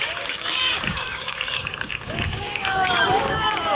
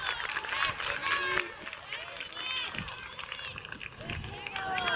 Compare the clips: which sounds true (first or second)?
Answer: second